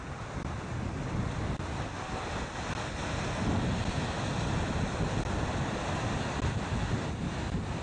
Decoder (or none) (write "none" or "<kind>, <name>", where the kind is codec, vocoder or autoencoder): none